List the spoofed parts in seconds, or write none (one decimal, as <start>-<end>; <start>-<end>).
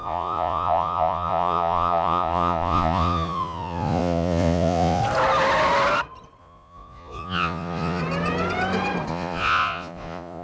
0.0-5.0; 6.4-8.0; 9.1-10.4